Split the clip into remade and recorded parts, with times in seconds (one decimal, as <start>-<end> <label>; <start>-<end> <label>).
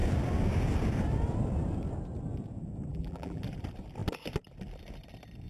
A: 0.0-2.9 recorded; 2.9-3.4 remade; 3.4-5.5 recorded